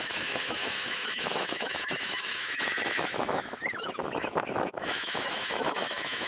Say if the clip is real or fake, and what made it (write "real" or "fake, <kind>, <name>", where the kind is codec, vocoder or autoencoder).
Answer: fake, autoencoder, DAC-VAE